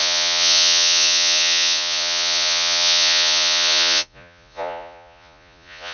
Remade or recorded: remade